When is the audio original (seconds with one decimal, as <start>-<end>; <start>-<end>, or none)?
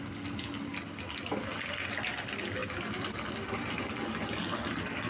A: 0.0-5.1